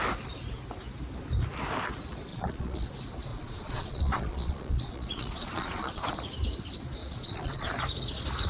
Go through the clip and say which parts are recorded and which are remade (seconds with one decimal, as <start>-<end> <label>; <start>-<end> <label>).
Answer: 0.0-2.3 recorded; 2.3-2.9 remade; 2.9-3.3 recorded; 3.3-6.1 remade; 6.1-7.0 recorded; 7.0-7.7 remade; 7.7-8.5 recorded